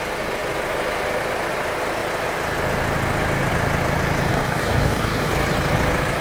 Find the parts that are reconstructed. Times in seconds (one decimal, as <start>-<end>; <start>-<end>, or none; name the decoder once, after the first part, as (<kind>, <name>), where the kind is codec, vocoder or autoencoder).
4.3-5.3 (codec, DAC)